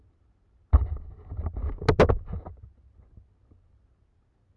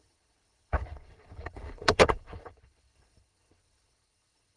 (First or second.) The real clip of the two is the first